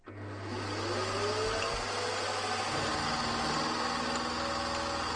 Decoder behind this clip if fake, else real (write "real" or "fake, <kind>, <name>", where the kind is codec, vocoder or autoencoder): real